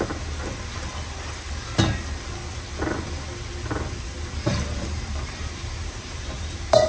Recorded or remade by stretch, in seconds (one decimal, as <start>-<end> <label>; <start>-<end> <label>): 0.0-4.5 recorded; 4.5-6.9 remade